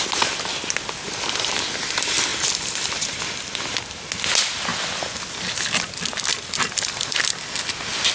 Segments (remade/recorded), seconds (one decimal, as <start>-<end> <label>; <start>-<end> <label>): 0.0-2.3 recorded; 2.3-3.7 remade; 3.7-4.7 recorded; 4.7-5.2 remade; 5.2-6.3 recorded; 6.3-7.2 remade; 7.2-8.1 recorded